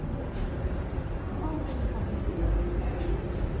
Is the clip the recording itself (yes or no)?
yes